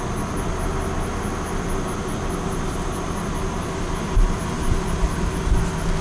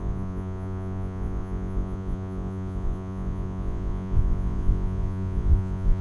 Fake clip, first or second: second